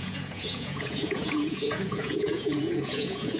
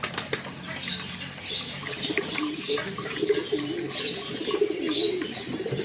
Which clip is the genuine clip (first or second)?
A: second